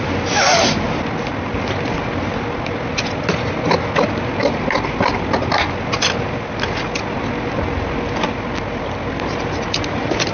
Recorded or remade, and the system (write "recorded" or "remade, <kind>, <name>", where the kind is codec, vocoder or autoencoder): recorded